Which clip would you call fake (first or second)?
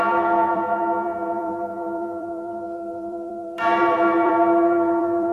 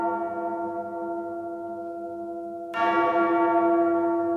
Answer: first